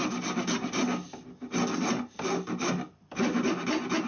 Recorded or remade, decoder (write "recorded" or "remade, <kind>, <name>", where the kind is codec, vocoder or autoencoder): recorded